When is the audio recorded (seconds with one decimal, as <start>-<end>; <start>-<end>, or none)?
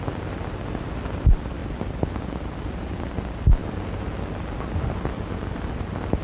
0.0-6.2